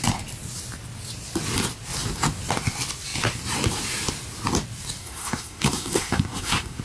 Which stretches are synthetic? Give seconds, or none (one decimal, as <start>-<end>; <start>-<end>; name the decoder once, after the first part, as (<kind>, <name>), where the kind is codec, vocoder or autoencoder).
5.0-6.8 (codec, SNAC)